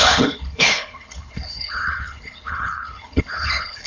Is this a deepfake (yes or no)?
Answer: yes